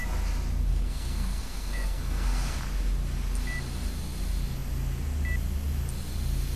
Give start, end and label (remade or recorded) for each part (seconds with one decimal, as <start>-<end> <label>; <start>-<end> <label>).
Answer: 0.0-0.7 recorded; 0.7-2.6 remade; 2.6-6.6 recorded

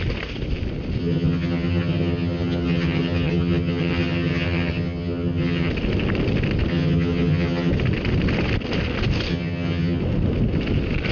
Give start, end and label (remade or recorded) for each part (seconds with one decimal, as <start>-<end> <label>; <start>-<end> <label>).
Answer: 0.0-1.0 recorded; 1.0-5.7 remade; 5.7-6.7 recorded; 6.7-7.7 remade; 7.7-9.3 recorded; 9.3-10.0 remade; 10.0-11.1 recorded